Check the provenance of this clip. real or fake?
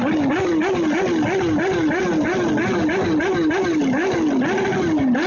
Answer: real